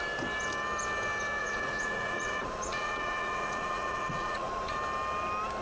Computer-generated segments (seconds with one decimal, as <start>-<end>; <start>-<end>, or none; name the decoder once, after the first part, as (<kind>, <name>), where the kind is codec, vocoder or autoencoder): 1.4-4.8 (vocoder, Vocos)